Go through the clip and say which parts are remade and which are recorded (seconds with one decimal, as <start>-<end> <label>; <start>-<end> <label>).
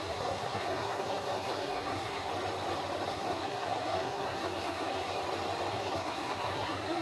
0.0-2.3 remade; 2.3-3.1 recorded; 3.1-5.2 remade; 5.2-5.7 recorded; 5.7-7.0 remade